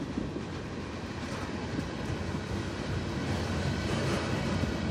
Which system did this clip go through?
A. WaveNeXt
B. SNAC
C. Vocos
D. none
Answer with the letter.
D